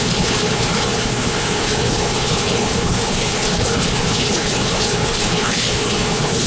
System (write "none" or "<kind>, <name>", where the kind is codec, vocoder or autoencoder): codec, HILCodec